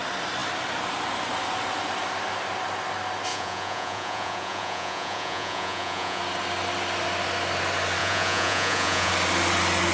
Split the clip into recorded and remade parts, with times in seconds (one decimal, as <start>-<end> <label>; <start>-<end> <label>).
0.0-3.3 recorded; 3.3-6.2 remade; 6.2-8.0 recorded; 8.0-9.1 remade; 9.1-9.9 recorded